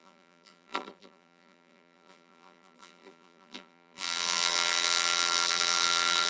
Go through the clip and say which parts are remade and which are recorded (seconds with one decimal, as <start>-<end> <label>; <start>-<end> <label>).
0.0-6.3 remade

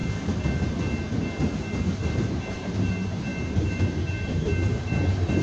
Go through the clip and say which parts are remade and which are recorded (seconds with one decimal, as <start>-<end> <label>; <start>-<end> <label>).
0.0-2.0 recorded; 2.0-5.4 remade

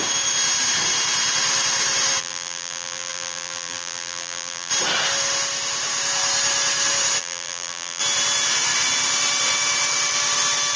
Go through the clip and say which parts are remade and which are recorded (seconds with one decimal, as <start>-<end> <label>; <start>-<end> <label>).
0.0-2.2 recorded; 2.2-4.7 remade; 4.7-7.2 recorded; 7.2-8.0 remade; 8.0-10.8 recorded

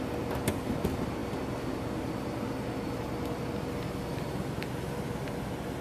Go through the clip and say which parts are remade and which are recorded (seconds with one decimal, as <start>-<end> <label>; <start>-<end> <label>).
0.0-5.8 recorded

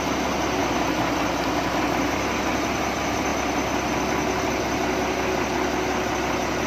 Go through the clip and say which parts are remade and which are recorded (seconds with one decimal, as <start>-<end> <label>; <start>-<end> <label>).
0.0-6.7 recorded

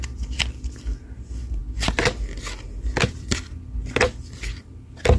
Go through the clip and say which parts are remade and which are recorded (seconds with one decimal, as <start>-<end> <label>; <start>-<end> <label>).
0.0-5.2 recorded